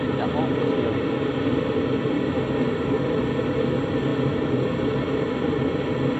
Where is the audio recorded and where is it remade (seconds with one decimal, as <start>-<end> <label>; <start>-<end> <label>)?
0.0-6.2 recorded